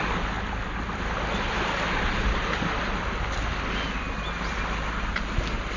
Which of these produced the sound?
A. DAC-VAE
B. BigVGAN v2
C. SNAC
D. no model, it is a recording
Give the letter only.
D